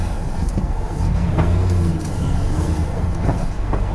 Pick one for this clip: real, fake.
fake